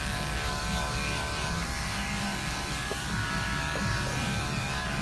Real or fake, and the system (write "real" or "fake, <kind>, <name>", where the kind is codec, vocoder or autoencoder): fake, codec, DAC